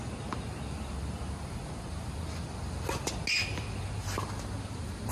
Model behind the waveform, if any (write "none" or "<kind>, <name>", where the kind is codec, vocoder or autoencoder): none